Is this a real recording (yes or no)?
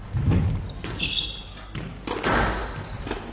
yes